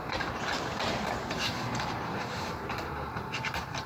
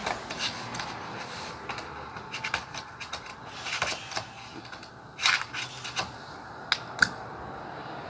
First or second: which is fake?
first